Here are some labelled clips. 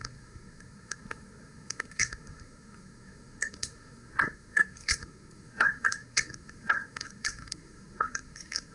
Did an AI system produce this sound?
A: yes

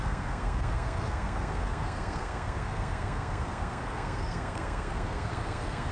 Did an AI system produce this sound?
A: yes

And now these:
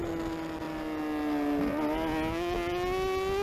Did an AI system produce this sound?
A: no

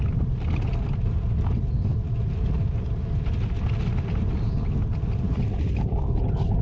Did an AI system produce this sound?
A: yes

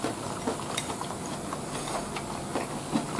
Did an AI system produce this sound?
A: no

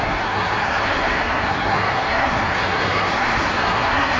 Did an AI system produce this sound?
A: yes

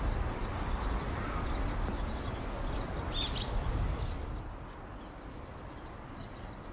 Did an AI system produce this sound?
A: no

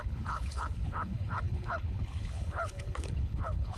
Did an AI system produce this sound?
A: yes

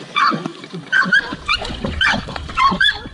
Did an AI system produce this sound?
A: yes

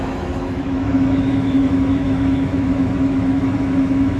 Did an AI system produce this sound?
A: yes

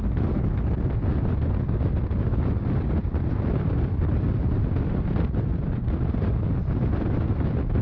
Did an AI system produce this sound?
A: no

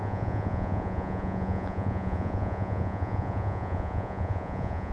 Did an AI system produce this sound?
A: yes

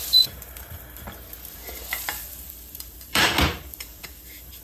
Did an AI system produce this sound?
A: yes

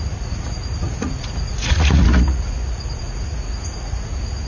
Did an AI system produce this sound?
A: yes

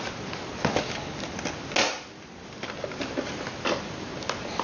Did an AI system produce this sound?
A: no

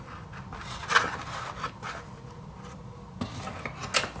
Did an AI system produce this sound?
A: no